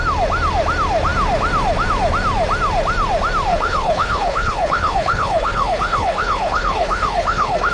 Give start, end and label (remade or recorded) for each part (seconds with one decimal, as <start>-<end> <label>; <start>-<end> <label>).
0.0-3.5 recorded; 3.5-7.7 remade